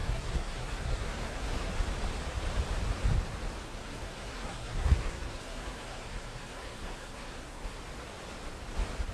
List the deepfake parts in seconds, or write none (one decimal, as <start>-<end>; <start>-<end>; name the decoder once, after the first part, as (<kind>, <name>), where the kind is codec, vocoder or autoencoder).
0.0-1.7 (codec, SNAC); 3.6-7.8